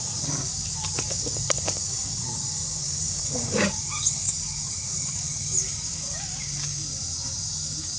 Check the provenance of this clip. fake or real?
fake